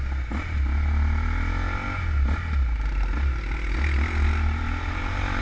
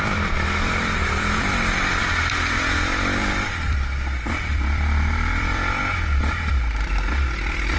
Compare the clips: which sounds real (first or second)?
first